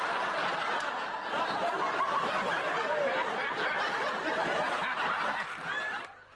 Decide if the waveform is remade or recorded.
recorded